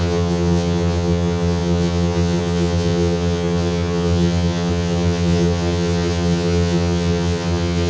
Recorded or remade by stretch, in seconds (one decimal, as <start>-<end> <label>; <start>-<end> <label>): 0.0-7.9 remade